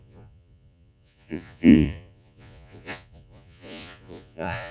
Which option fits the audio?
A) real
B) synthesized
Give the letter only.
B